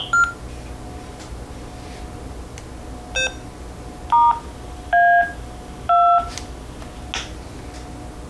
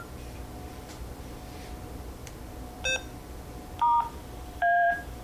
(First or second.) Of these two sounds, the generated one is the second